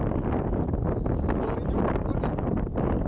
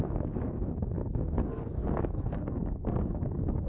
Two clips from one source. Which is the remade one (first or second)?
second